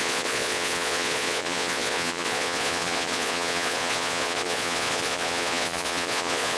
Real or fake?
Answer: fake